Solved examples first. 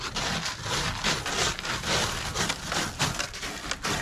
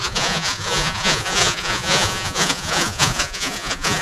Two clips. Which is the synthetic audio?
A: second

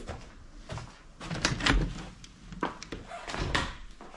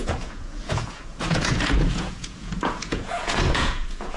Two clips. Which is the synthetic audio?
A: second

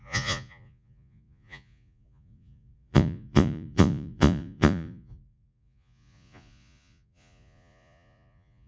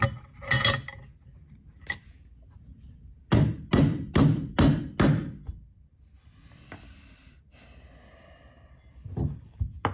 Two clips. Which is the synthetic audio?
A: first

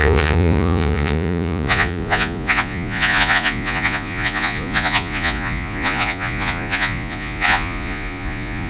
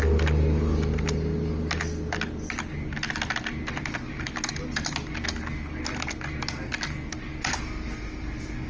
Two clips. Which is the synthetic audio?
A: first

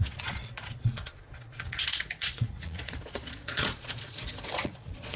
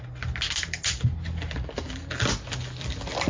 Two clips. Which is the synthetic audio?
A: first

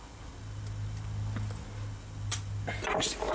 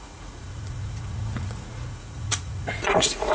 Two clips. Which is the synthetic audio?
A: second